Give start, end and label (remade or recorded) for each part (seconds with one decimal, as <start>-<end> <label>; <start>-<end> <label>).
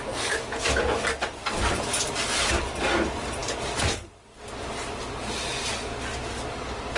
0.0-7.0 recorded